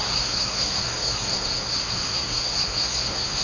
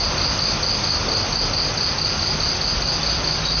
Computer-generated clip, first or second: first